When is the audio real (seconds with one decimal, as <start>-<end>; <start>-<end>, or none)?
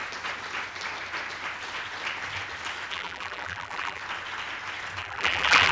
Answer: 0.0-2.9; 4.0-5.0